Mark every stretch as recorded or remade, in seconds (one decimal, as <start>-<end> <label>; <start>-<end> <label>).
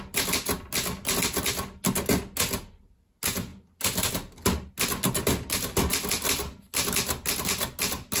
0.0-8.2 recorded